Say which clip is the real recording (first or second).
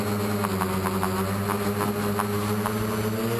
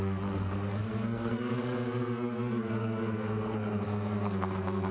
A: first